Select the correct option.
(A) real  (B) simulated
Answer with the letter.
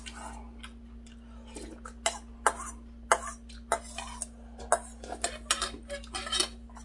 A